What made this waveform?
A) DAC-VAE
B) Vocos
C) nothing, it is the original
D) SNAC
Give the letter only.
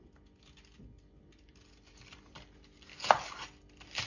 C